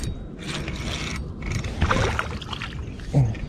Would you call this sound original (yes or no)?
yes